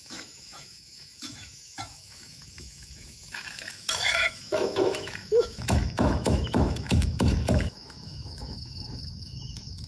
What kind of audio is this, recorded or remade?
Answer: remade